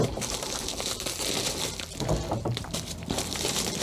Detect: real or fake real